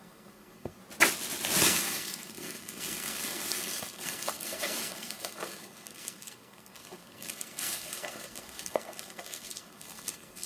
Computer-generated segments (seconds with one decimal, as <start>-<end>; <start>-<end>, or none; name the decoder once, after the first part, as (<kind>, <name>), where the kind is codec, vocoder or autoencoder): 0.0-0.8 (codec, SNAC); 1.6-10.5